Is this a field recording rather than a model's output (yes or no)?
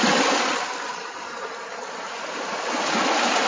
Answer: yes